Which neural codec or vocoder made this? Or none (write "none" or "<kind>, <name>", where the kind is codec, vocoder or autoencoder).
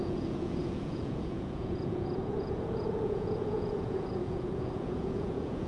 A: vocoder, Vocos